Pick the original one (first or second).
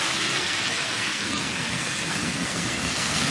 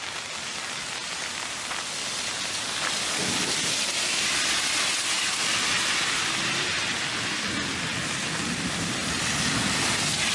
second